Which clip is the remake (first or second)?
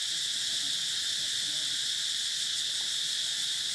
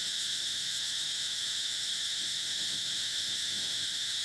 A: second